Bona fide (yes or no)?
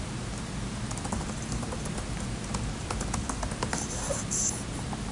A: yes